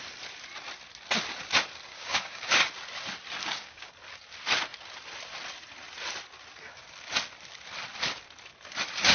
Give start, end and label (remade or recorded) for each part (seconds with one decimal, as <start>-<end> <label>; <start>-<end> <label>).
0.0-1.9 recorded; 1.9-2.7 remade; 2.7-3.4 recorded; 3.4-3.9 remade; 3.9-9.1 recorded